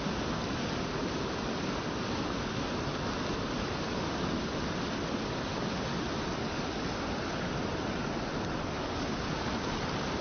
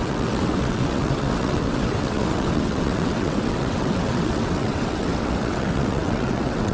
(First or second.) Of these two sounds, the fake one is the second